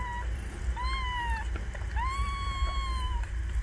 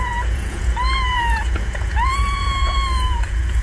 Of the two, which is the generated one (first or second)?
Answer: second